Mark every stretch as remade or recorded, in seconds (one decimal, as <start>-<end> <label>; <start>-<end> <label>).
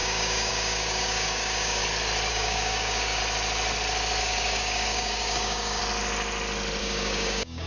0.0-1.8 remade; 1.8-2.3 recorded; 2.3-3.2 remade; 3.2-4.2 recorded; 4.2-5.8 remade; 5.8-6.8 recorded; 6.8-7.7 remade